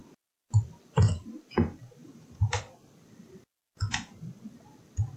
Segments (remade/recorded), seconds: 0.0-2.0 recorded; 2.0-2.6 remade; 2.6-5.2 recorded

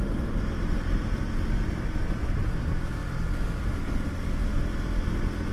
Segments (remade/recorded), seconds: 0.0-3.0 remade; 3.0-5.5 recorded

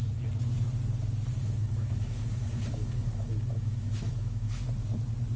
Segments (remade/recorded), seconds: 0.0-1.4 recorded; 1.4-4.6 remade; 4.6-5.4 recorded

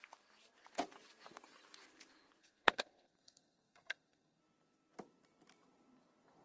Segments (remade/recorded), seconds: 0.0-2.4 recorded; 2.4-4.4 remade; 4.4-6.4 recorded